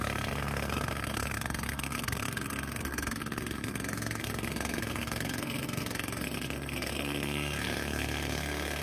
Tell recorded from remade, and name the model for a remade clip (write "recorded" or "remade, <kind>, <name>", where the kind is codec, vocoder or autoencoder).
remade, codec, SNAC